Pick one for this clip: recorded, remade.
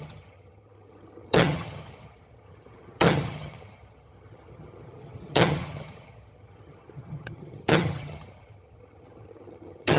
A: remade